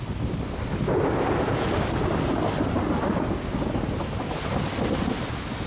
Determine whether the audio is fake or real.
real